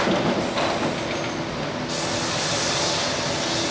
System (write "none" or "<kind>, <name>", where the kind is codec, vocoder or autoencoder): none